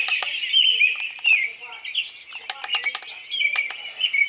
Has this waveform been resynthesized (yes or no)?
no